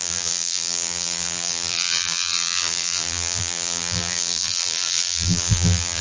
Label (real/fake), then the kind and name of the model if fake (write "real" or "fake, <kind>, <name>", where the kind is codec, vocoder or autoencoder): fake, vocoder, BigVGAN v2